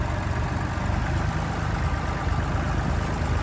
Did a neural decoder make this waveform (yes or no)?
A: no